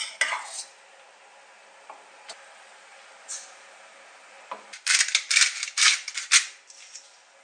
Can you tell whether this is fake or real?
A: real